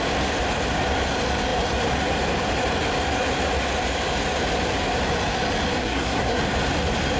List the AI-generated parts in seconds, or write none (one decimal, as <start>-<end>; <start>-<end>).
5.8-6.4